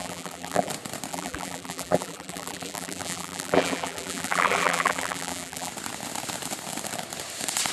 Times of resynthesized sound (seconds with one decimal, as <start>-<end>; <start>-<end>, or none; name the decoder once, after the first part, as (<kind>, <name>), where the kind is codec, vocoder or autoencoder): 0.0-0.7 (vocoder, BigVGAN v2); 1.1-5.7